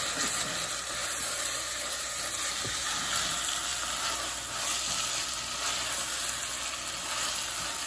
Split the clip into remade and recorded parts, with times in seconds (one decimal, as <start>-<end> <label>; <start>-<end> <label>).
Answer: 0.0-1.0 recorded; 1.0-3.0 remade; 3.0-7.9 recorded